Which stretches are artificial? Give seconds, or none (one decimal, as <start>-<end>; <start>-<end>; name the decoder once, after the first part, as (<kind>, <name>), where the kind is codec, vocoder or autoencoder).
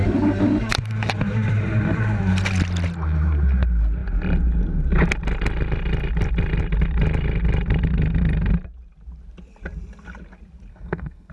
10.7-11.3 (codec, SNAC)